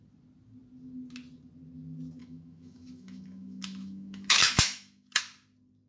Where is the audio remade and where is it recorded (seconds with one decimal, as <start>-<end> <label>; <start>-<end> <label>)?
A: 0.0-2.2 recorded; 2.2-5.2 remade; 5.2-5.9 recorded